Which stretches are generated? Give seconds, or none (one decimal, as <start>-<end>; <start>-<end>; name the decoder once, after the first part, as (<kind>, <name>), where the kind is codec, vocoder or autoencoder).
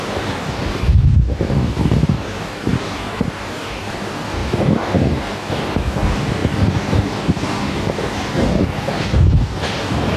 0.0-10.2 (codec, DAC)